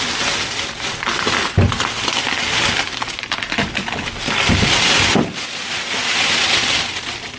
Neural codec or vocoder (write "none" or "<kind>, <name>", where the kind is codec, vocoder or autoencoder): none